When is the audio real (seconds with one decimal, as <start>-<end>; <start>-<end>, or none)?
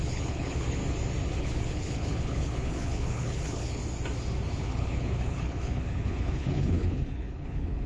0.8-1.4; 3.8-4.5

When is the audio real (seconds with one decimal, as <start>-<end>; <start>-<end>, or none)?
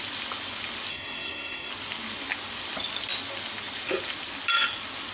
0.0-0.9; 1.7-5.1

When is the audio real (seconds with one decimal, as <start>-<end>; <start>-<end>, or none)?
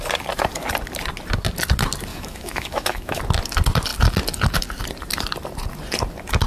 0.0-2.1; 3.2-6.5